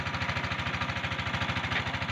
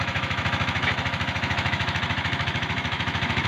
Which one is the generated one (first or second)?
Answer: second